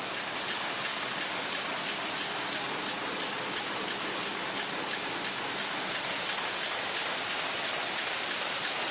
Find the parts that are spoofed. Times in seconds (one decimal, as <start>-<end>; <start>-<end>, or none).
0.9-2.2